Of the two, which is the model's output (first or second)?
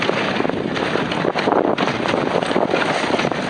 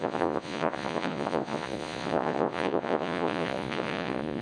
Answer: second